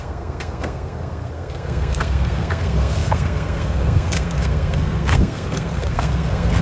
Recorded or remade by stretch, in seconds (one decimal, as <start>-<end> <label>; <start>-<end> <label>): 0.0-6.6 remade